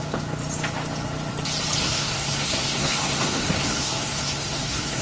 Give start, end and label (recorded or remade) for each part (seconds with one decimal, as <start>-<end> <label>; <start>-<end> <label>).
0.0-1.8 recorded; 1.8-5.0 remade